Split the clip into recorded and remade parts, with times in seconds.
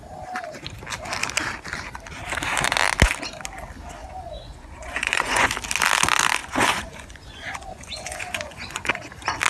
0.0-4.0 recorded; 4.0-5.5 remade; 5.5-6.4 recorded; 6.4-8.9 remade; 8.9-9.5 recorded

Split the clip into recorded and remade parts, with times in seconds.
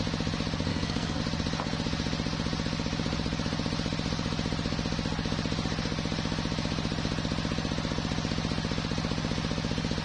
0.0-0.7 recorded; 0.7-1.2 remade; 1.2-10.0 recorded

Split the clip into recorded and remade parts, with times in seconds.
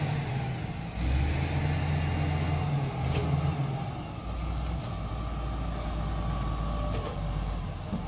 0.0-8.1 recorded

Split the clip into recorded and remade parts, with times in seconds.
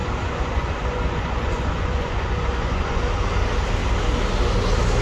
0.0-3.0 remade; 3.0-5.0 recorded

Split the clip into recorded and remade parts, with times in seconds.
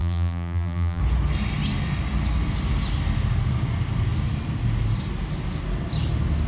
0.0-1.0 remade; 1.0-6.5 recorded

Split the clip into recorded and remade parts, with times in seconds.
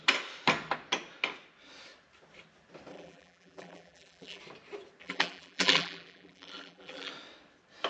0.0-2.9 recorded; 2.9-4.4 remade; 4.4-5.0 recorded; 5.0-7.1 remade; 7.1-7.9 recorded